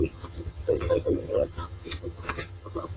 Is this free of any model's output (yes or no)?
no